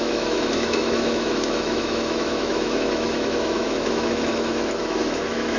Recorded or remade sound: remade